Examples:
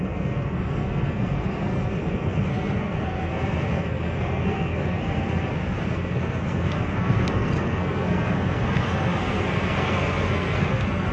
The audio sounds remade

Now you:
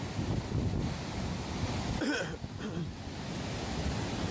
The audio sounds recorded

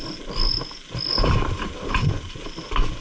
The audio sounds recorded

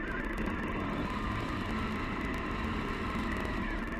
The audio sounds recorded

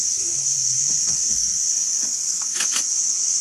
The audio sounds remade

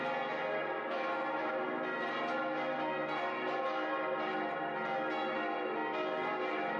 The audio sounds recorded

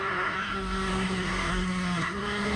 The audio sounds remade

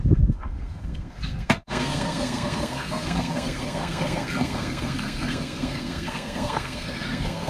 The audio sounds remade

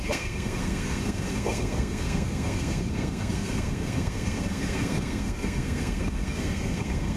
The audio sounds remade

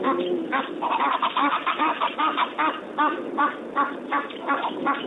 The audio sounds recorded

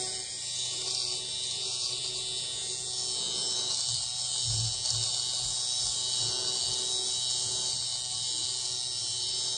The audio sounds recorded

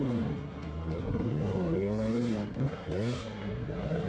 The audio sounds remade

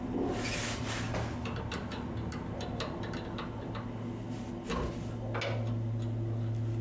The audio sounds recorded